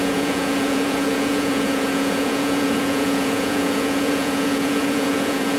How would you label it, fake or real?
fake